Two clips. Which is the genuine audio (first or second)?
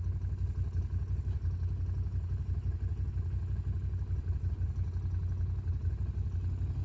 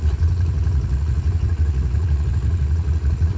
first